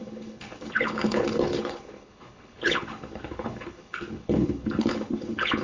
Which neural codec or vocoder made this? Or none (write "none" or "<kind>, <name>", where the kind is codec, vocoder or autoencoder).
codec, HILCodec